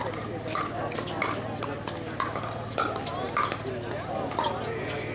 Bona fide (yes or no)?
yes